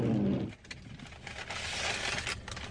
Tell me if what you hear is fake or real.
real